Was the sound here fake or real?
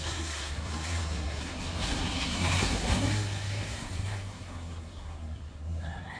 fake